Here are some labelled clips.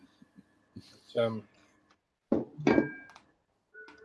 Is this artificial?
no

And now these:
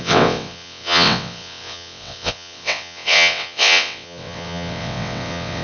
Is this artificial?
yes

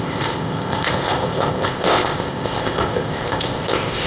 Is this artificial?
yes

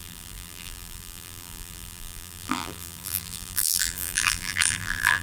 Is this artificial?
yes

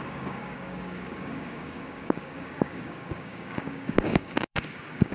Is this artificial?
yes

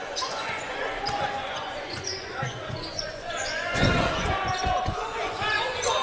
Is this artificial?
yes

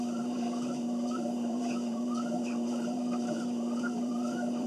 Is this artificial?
yes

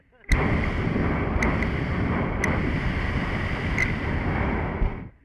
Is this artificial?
no